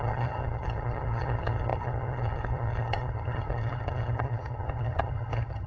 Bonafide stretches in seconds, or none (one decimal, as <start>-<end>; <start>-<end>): none